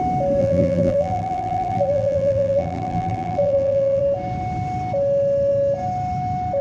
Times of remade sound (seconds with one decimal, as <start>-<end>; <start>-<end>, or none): 0.4-4.0